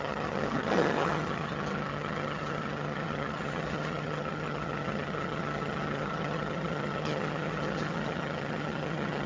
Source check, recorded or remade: remade